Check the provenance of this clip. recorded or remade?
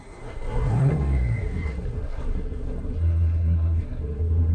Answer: remade